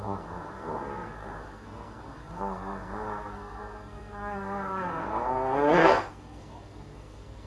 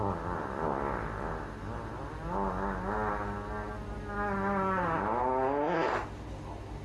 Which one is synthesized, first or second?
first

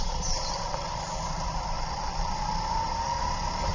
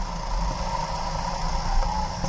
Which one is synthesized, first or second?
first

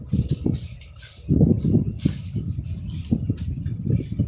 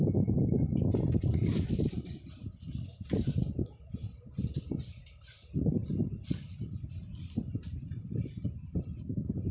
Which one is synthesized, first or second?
second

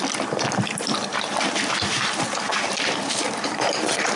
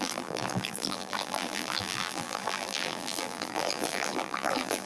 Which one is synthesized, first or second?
second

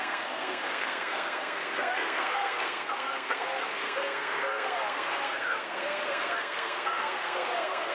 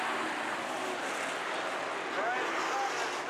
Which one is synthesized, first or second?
first